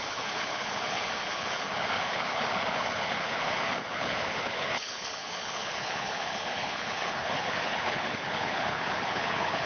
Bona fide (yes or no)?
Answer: no